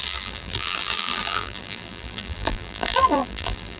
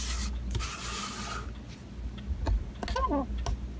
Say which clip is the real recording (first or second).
second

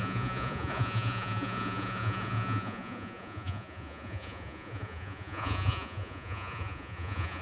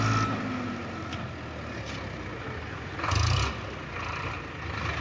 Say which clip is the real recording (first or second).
second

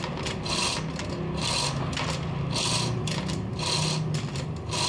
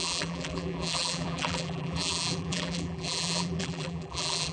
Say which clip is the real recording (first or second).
first